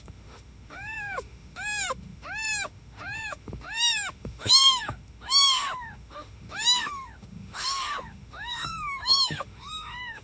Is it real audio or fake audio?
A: fake